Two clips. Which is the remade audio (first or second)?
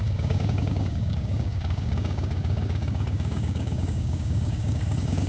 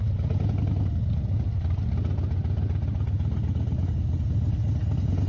first